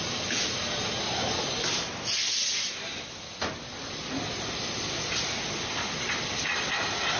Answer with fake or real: real